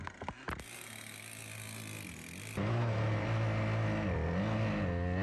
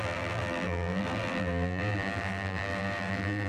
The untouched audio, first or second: first